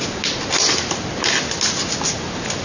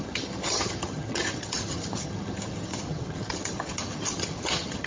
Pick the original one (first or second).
first